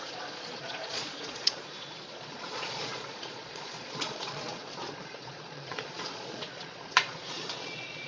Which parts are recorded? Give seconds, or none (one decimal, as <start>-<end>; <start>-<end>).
none